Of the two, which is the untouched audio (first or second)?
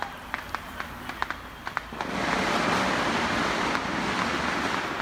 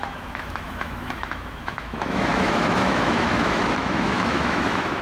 first